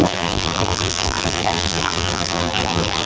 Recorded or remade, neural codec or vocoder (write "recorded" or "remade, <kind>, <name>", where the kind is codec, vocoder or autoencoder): remade, vocoder, BigVGAN v2